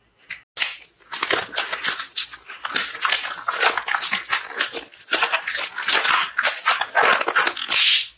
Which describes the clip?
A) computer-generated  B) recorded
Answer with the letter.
B